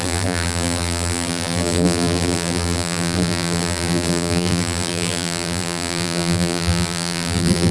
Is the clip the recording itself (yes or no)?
no